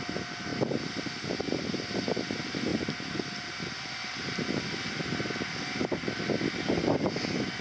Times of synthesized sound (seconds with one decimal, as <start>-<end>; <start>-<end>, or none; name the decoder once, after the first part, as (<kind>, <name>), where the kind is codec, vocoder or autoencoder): none